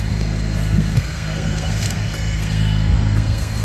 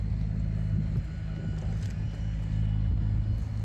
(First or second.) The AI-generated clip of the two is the first